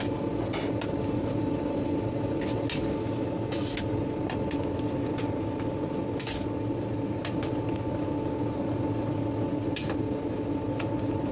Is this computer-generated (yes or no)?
no